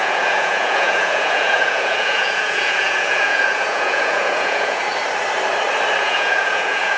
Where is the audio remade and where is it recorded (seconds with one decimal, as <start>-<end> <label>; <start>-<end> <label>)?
0.0-4.9 remade; 4.9-6.0 recorded; 6.0-7.0 remade